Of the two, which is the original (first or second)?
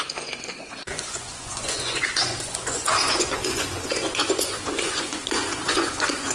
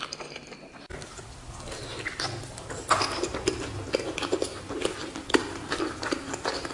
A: second